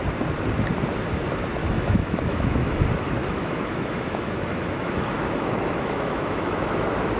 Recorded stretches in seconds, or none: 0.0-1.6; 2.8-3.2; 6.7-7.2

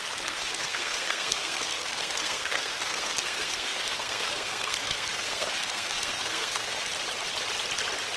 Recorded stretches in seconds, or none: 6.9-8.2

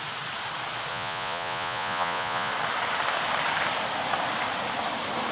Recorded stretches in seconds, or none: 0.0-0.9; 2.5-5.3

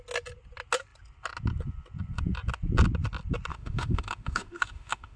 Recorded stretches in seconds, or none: 0.0-3.5

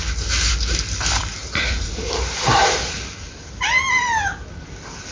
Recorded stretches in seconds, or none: 0.0-5.1

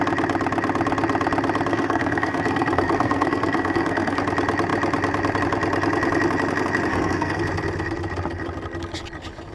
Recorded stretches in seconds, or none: 0.0-1.7; 4.2-6.9; 7.4-9.5

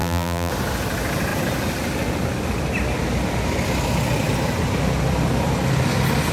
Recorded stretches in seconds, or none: 0.5-6.3

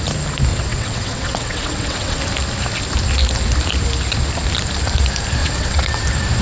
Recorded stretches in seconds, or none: 0.0-0.5; 2.2-5.4; 6.0-6.4